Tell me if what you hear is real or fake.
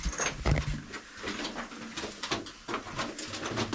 real